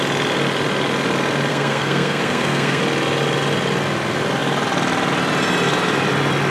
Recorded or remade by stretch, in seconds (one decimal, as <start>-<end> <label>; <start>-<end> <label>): 0.0-1.5 recorded; 1.5-2.8 remade; 2.8-6.5 recorded